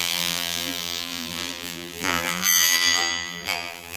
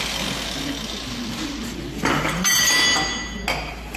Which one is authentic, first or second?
second